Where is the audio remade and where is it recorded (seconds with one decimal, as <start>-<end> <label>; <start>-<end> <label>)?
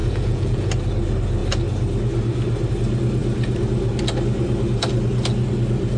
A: 0.0-0.7 remade; 0.7-6.0 recorded